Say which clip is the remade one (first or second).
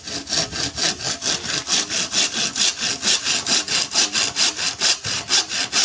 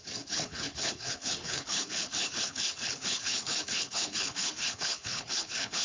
second